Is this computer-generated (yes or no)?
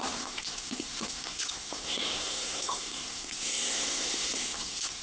yes